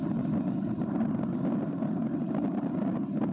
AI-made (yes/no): no